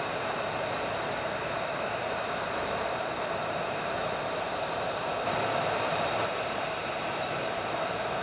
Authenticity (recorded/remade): remade